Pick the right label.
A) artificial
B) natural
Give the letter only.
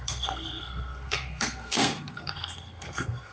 A